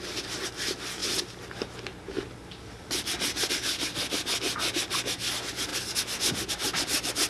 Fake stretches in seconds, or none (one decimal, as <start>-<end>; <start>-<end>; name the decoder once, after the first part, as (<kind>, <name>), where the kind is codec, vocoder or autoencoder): none